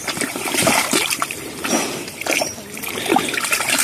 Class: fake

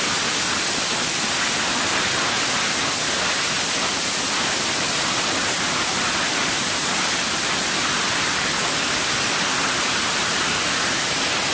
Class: fake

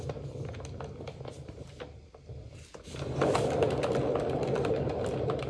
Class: real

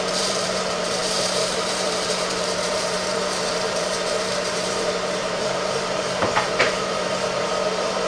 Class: fake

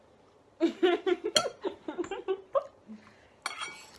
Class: real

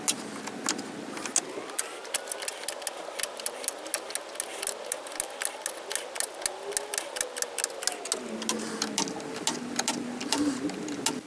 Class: real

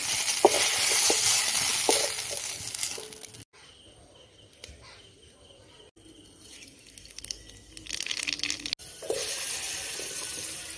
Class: real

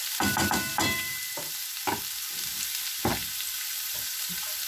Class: real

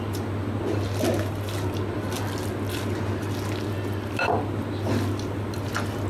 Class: real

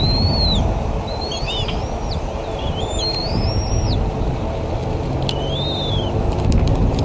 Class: real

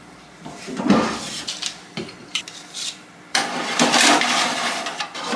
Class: fake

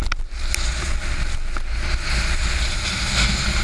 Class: real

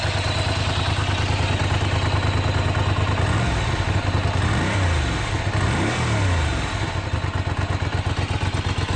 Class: real